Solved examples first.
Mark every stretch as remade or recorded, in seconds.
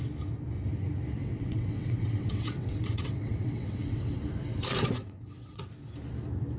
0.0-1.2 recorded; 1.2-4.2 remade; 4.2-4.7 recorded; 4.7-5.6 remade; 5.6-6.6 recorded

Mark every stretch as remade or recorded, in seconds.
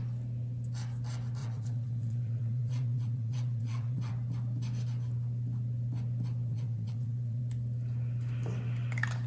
0.0-1.4 recorded; 1.4-4.1 remade; 4.1-6.5 recorded; 6.5-7.4 remade; 7.4-9.3 recorded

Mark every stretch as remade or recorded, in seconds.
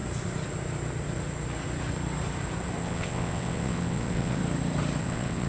0.0-2.8 recorded; 2.8-4.4 remade; 4.4-5.0 recorded; 5.0-5.5 remade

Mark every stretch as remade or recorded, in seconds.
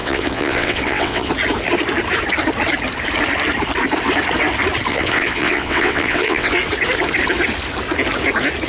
0.0-1.3 remade; 1.3-4.9 recorded; 4.9-6.5 remade; 6.5-8.7 recorded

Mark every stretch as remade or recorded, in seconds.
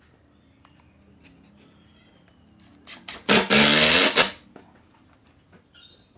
0.0-6.2 recorded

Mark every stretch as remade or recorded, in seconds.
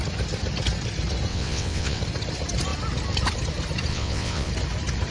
0.0-1.3 recorded; 1.3-2.0 remade; 2.0-3.9 recorded; 3.9-4.5 remade; 4.5-5.1 recorded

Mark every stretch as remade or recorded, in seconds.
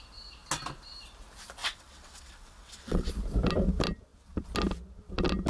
0.0-1.6 recorded; 1.6-3.1 remade; 3.1-5.5 recorded